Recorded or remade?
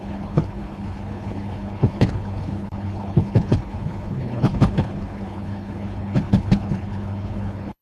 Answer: remade